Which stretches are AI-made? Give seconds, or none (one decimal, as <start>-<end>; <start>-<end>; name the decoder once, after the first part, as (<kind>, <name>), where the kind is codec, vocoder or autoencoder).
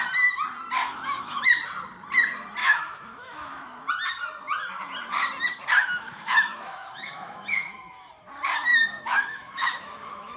0.9-1.5 (autoencoder, DAC-VAE); 2.6-3.9; 5.8-8.1; 8.7-10.4